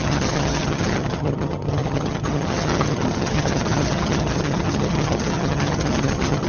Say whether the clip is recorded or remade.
remade